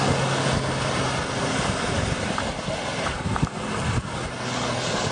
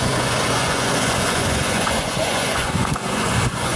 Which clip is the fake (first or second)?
second